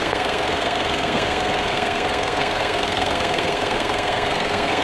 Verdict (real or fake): fake